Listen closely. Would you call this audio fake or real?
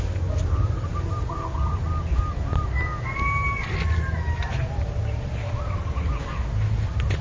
real